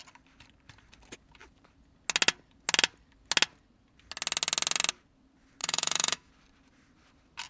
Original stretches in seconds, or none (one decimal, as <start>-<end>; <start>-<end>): 0.0-5.6; 6.3-7.5